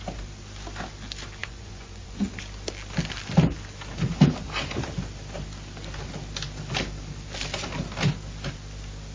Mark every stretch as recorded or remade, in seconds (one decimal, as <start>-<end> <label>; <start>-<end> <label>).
0.0-1.4 recorded; 1.4-2.3 remade; 2.3-9.1 recorded